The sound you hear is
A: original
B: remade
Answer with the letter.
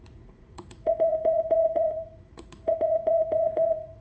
B